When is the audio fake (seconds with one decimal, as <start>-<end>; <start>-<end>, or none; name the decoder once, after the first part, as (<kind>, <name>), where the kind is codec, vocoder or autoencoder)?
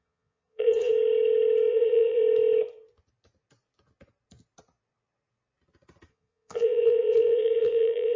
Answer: 0.0-0.9 (vocoder, Vocos); 1.7-2.2; 6.1-8.2